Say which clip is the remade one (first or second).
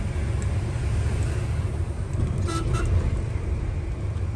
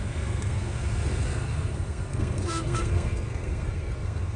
second